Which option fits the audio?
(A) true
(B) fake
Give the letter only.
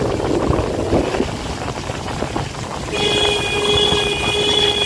A